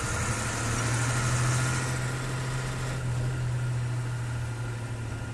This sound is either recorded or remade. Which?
recorded